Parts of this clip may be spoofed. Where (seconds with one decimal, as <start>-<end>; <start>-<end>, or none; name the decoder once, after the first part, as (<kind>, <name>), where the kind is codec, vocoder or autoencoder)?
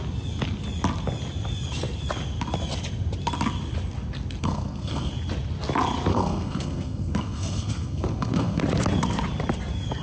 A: 4.4-5.1 (codec, SNAC); 6.1-8.6